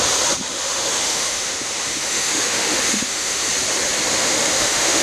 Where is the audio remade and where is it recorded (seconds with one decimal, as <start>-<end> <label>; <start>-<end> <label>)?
0.0-0.5 recorded; 0.5-3.5 remade; 3.5-4.1 recorded; 4.1-5.0 remade